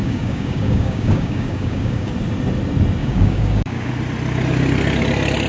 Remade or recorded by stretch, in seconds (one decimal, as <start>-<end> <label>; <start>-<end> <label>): 0.0-2.1 remade; 2.1-3.0 recorded; 3.0-3.9 remade; 3.9-5.5 recorded